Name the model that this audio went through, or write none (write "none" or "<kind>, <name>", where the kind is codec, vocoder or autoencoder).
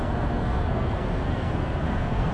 codec, SNAC